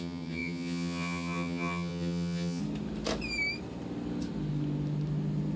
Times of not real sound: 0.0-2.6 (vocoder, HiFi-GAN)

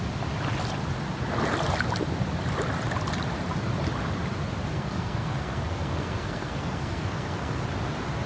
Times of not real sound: 4.7-7.6 (codec, SNAC)

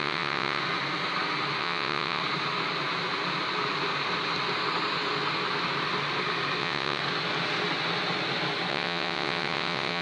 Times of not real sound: 0.0-0.6 (vocoder, WaveNeXt); 1.6-2.2; 6.6-7.0; 8.7-10.0

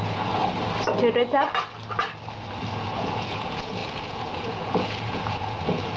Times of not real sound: 0.0-0.4 (vocoder, Vocos); 2.7-6.0

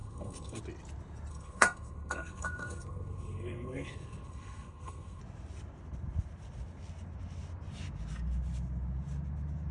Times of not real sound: 0.0-0.6 (codec, SNAC); 1.3-5.2

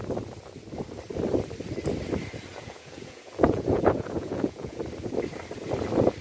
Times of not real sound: 2.5-4.8 (vocoder, Vocos)

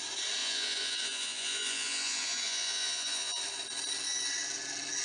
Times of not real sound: 0.4-3.4 (vocoder, Vocos)